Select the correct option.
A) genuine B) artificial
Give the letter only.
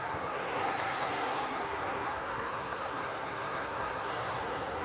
B